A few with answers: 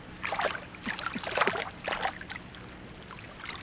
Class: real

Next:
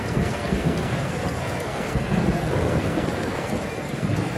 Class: fake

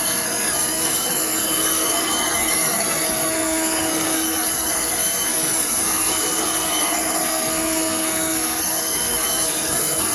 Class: fake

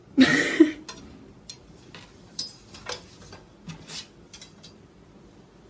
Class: real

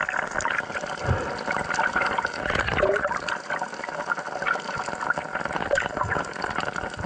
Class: real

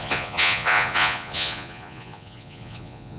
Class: fake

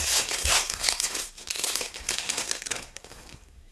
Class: fake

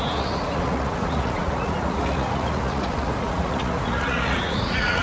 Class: fake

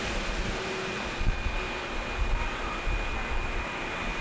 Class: real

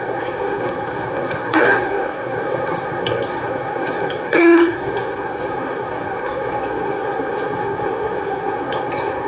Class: fake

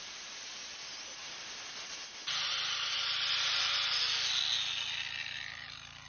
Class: real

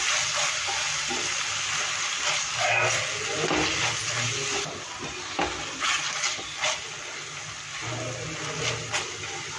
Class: real